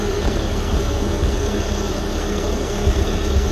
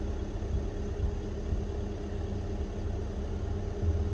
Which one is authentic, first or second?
second